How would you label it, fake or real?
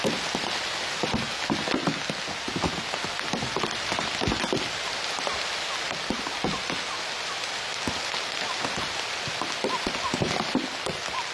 real